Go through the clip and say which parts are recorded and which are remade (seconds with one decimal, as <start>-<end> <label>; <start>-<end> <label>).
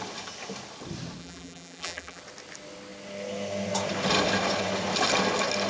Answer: 0.0-1.2 recorded; 1.2-2.2 remade; 2.2-5.7 recorded